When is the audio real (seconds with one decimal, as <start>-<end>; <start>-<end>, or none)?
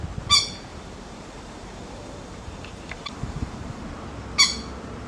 0.0-0.7; 3.8-5.1